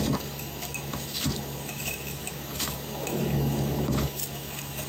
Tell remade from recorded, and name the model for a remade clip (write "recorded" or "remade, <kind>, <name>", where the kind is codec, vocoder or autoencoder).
remade, codec, DAC